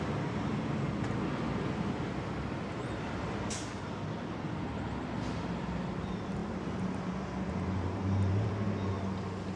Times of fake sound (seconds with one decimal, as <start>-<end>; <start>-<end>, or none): 6.4-8.5